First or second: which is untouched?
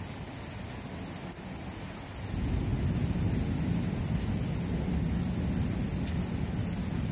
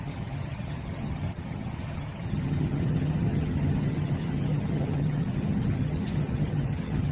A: first